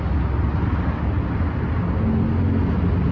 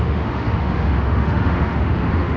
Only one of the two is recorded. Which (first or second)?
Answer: first